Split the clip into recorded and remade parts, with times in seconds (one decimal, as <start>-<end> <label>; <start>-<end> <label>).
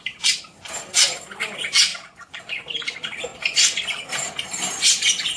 0.0-1.9 recorded; 1.9-2.4 remade; 2.4-5.4 recorded